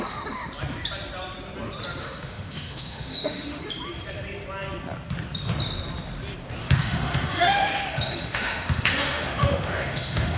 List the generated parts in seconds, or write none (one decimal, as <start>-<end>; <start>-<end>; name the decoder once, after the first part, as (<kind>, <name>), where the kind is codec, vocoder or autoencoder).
2.0-3.6 (autoencoder, DAC-VAE); 6.6-10.4